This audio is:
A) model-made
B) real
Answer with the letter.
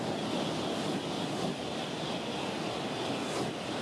B